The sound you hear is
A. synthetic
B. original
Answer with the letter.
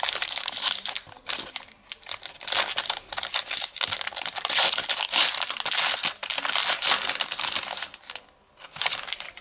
B